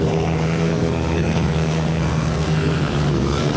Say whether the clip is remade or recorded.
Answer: remade